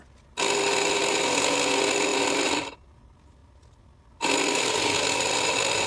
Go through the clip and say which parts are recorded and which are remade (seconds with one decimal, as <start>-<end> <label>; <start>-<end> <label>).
0.0-5.9 recorded